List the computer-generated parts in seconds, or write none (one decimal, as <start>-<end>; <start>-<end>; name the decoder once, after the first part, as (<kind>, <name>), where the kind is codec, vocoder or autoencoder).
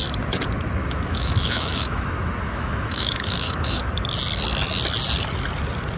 0.8-3.9 (autoencoder, DAC-VAE)